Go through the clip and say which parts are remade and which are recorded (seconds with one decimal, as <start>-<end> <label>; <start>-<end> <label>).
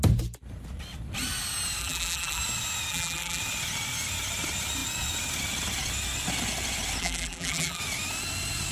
0.0-1.8 recorded; 1.8-2.4 remade; 2.4-2.9 recorded; 2.9-3.4 remade; 3.4-7.0 recorded; 7.0-7.8 remade; 7.8-8.7 recorded